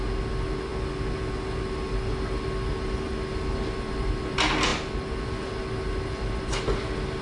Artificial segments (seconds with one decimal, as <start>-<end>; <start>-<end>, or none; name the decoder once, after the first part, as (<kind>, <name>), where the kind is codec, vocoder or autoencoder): none